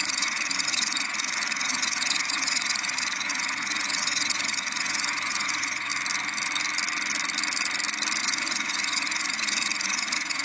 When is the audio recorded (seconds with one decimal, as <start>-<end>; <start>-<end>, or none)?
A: 5.9-8.2